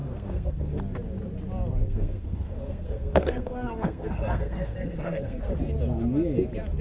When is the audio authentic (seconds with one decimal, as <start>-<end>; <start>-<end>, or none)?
0.8-1.8; 5.4-6.8